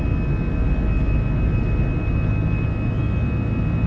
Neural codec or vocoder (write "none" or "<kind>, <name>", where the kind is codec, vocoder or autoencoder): none